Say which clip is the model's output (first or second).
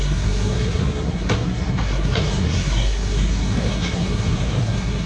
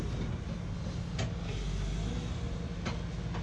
first